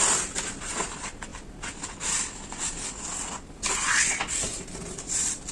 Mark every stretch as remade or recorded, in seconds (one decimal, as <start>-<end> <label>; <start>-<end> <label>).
0.0-5.5 recorded